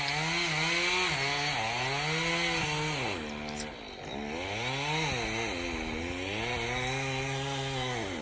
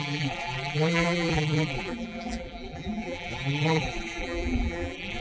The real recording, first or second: first